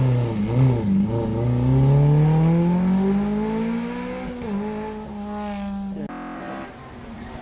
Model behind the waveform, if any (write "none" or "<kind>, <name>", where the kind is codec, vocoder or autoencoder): none